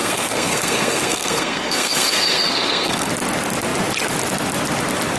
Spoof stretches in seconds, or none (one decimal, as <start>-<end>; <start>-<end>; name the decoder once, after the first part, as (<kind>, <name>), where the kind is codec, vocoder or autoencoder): 0.0-3.1 (codec, SNAC)